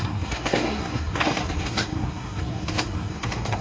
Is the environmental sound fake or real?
fake